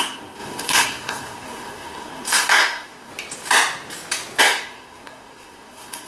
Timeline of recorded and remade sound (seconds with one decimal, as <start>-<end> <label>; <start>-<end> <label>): 0.0-3.1 remade; 3.1-4.4 recorded; 4.4-6.1 remade